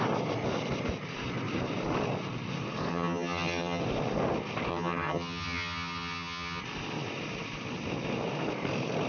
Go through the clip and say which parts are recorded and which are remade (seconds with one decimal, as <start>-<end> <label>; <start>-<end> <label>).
0.0-2.9 recorded; 2.9-3.8 remade; 3.8-4.7 recorded; 4.7-6.6 remade; 6.6-9.1 recorded